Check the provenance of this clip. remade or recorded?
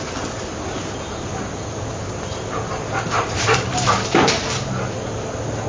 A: recorded